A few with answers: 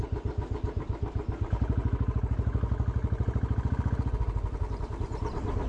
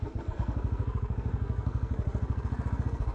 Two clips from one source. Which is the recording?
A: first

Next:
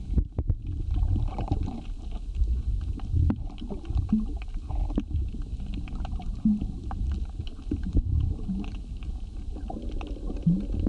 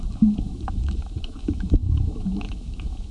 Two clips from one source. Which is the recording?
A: first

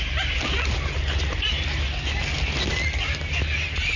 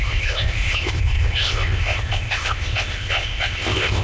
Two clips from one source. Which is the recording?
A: first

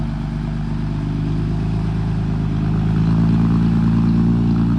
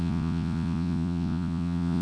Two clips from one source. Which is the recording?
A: first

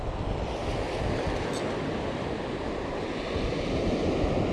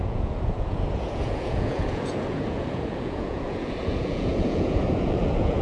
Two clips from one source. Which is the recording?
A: first